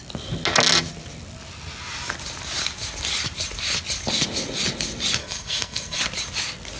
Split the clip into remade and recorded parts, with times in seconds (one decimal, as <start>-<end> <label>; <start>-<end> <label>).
0.0-5.2 recorded; 5.2-6.0 remade; 6.0-6.8 recorded